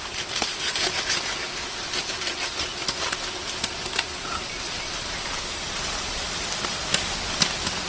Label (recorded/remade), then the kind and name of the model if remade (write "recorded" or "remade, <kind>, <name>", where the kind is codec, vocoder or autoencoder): recorded